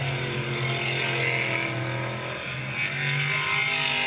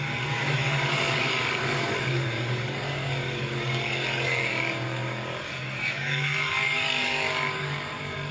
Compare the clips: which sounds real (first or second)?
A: first